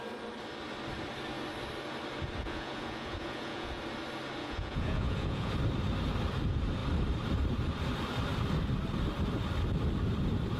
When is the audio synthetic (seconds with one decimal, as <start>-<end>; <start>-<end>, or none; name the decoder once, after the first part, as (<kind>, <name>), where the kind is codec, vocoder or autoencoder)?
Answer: 2.4-3.8 (vocoder, Vocos); 4.4-5.5